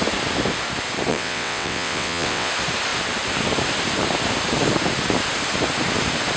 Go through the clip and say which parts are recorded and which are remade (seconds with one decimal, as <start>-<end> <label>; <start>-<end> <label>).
0.0-1.1 recorded; 1.1-2.5 remade; 2.5-6.4 recorded